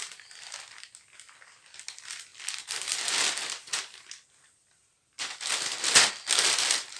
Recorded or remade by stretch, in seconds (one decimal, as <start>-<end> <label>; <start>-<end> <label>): 0.0-7.0 recorded